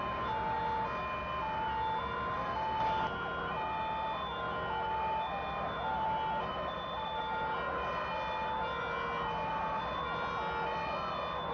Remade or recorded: recorded